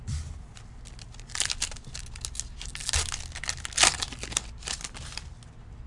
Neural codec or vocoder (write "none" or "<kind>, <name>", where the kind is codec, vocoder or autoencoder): none